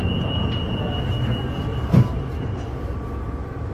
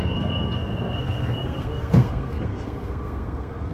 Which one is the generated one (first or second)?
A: second